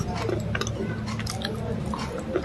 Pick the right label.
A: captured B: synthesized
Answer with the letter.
A